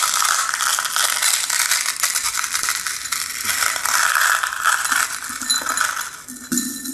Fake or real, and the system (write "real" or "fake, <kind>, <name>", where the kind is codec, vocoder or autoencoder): real